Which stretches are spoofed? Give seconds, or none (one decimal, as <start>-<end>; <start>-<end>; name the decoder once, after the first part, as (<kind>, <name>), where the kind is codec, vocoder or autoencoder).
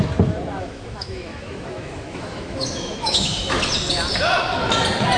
0.5-3.6 (autoencoder, DAC-VAE)